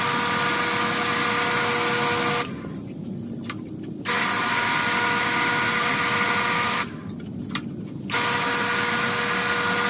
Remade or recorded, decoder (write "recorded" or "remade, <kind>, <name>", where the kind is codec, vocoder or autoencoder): recorded